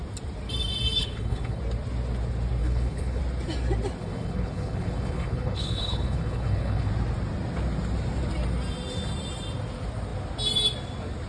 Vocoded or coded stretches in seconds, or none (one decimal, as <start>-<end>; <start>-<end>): 1.0-1.6; 2.6-3.2; 4.0-6.9